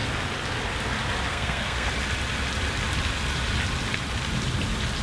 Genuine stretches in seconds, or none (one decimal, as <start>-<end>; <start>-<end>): 0.0-1.3; 1.9-5.0